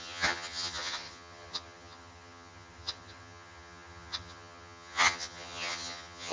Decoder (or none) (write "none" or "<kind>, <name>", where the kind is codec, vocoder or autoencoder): vocoder, HiFi-GAN